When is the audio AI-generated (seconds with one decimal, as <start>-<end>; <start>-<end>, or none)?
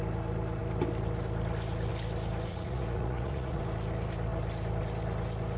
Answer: 2.5-3.6